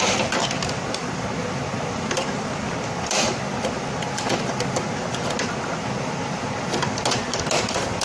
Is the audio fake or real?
fake